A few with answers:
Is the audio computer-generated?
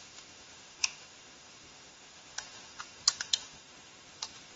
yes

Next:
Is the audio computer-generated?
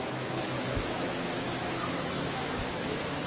yes